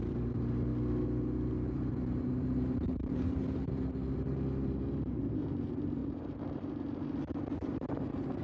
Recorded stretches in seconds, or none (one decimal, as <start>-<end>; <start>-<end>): 0.7-1.5

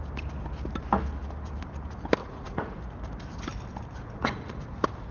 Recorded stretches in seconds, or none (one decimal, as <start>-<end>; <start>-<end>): 0.0-2.2; 2.8-4.0; 4.6-5.1

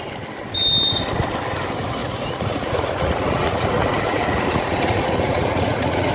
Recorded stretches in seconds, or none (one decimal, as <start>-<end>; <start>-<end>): 0.0-2.0

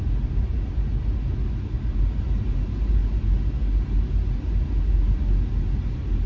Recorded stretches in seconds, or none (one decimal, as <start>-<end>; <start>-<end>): 0.0-6.3

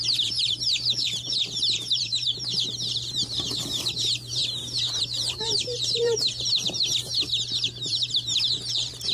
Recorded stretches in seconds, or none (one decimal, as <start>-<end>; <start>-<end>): 4.4-5.0

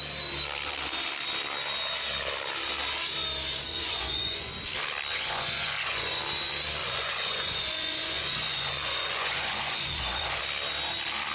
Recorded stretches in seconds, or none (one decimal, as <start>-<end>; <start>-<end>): 0.0-3.7; 4.5-5.1; 6.2-6.8; 10.4-11.3